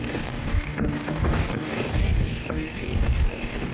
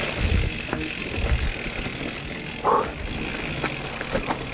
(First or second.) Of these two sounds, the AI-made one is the first